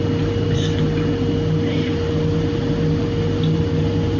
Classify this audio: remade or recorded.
recorded